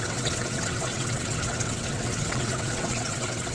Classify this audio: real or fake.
fake